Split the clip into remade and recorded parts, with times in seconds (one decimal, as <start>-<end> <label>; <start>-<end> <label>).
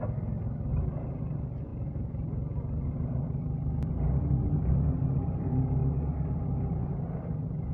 0.0-7.7 recorded